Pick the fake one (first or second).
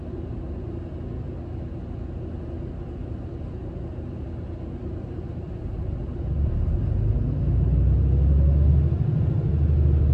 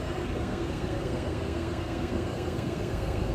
second